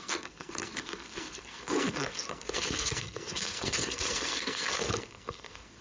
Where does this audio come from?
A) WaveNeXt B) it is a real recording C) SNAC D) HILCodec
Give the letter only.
C